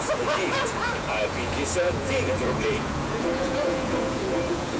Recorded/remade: remade